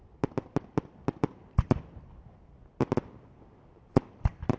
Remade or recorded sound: recorded